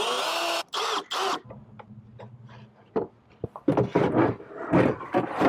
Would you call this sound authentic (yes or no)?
yes